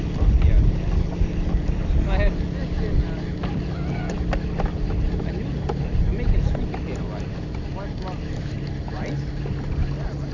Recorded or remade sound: recorded